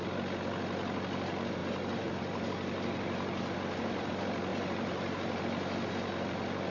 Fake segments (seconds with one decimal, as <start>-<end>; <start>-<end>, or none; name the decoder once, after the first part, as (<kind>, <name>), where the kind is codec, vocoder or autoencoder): 1.6-4.1 (vocoder, BigVGAN v2); 4.5-5.4